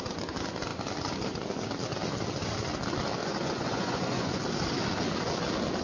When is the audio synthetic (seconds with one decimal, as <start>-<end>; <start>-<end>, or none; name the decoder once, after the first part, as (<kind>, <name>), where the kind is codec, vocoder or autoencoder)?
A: 3.2-4.4 (vocoder, Vocos)